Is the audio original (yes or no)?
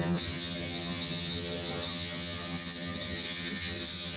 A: no